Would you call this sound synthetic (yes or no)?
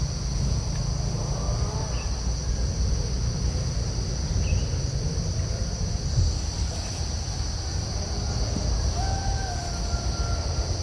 no